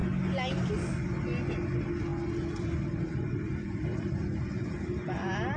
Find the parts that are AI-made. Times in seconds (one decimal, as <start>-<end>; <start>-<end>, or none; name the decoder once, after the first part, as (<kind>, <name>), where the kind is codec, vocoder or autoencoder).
2.1-4.7 (vocoder, BigVGAN v2)